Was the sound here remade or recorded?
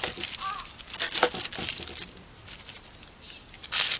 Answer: recorded